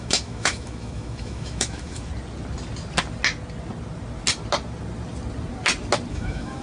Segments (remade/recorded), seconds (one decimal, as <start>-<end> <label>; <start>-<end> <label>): 0.0-2.1 remade; 2.1-6.1 recorded; 6.1-6.6 remade